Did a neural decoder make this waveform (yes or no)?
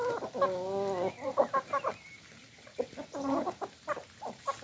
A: no